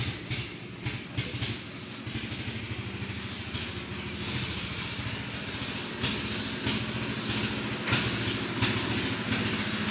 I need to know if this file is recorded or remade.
recorded